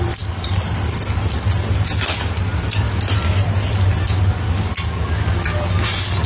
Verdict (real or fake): real